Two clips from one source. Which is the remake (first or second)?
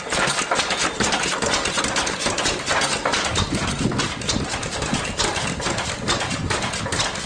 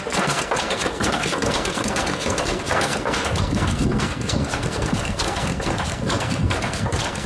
second